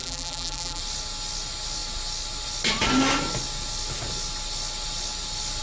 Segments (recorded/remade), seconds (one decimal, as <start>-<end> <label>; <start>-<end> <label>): 0.0-0.8 remade; 0.8-5.6 recorded